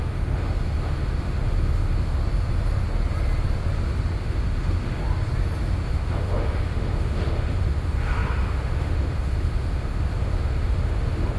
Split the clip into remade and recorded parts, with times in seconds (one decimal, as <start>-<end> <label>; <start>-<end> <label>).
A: 0.0-2.2 remade; 2.2-4.2 recorded; 4.2-5.0 remade; 5.0-5.9 recorded; 5.9-11.4 remade